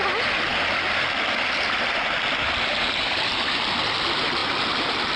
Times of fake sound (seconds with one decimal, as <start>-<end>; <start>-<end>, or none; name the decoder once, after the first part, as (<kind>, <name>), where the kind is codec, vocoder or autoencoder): none